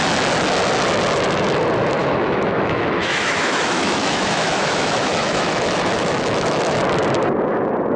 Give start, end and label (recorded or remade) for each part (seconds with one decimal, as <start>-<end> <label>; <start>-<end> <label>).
0.0-2.0 recorded; 2.0-6.8 remade; 6.8-8.0 recorded